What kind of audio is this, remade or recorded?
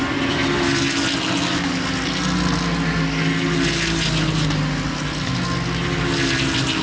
recorded